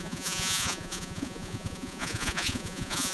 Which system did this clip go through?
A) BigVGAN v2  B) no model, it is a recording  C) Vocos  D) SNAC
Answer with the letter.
C